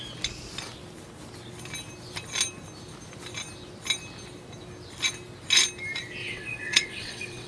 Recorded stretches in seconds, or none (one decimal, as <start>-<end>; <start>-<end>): 0.0-6.2